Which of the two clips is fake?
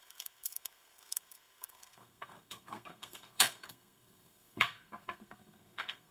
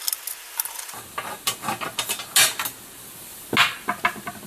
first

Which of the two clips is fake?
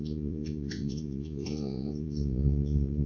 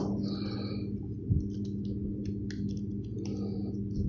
first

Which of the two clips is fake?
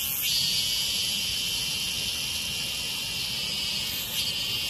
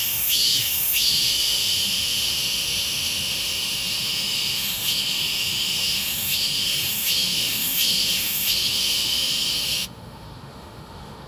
second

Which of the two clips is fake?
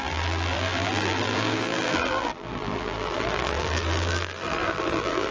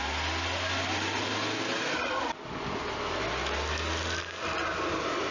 first